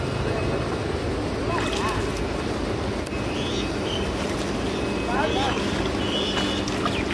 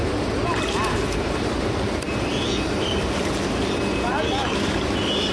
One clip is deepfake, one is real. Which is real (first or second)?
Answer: first